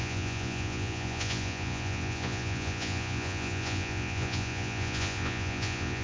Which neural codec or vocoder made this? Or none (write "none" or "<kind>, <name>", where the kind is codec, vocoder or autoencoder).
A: vocoder, Vocos